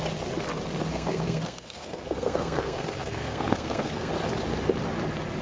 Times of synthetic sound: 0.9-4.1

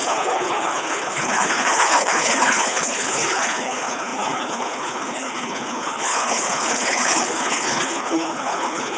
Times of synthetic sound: 0.0-9.0

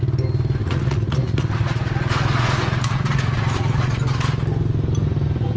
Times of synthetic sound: 0.6-4.0